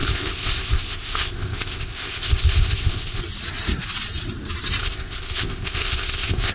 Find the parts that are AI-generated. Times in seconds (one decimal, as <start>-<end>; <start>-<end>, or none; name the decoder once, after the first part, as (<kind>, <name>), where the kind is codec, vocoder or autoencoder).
0.0-3.2 (codec, ZipCodec); 4.8-6.5